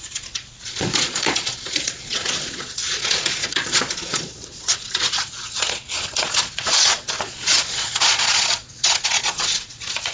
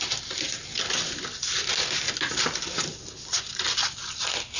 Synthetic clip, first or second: first